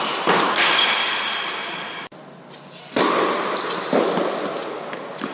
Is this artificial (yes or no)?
no